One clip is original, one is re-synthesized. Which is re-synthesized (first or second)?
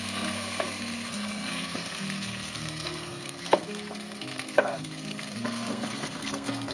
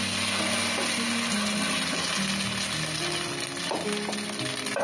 first